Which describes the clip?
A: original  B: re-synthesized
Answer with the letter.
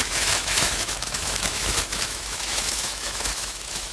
B